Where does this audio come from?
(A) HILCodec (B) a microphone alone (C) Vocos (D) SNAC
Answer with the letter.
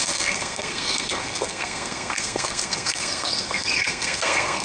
D